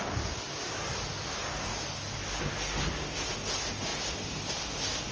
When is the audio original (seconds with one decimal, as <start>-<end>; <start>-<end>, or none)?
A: 0.0-5.1